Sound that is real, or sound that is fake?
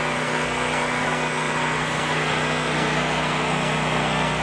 fake